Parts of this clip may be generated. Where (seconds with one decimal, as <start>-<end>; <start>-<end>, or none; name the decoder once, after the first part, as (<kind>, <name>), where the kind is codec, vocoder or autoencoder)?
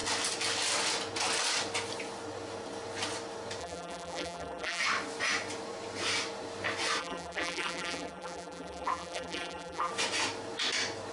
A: 3.6-4.8 (vocoder, BigVGAN v2); 7.0-9.9